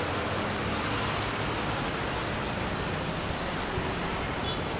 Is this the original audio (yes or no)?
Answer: yes